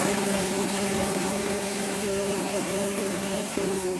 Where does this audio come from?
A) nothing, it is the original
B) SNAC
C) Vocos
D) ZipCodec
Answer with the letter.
B